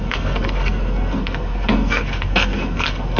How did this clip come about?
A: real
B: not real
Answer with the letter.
B